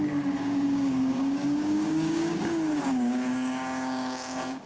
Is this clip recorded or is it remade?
remade